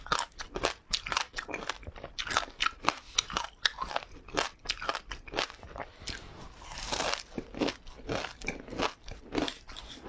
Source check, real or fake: real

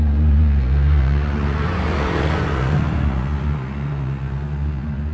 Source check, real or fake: fake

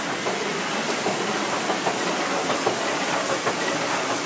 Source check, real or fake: real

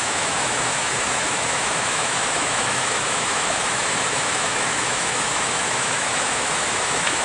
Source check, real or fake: fake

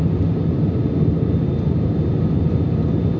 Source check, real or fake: real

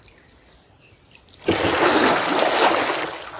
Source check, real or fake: real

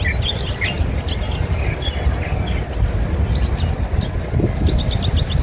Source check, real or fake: real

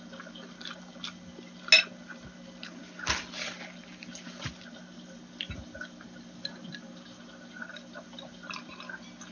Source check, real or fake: real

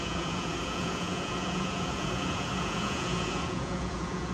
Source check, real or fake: fake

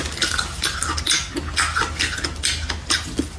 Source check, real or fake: real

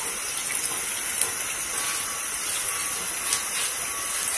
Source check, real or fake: real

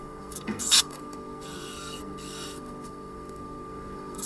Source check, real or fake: fake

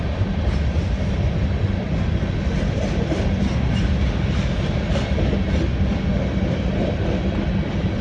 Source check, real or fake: real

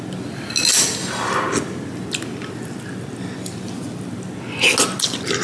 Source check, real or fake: real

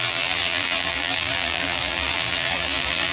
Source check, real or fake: fake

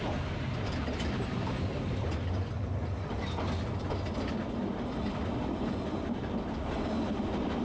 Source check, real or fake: real